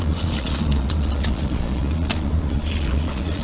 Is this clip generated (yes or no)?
yes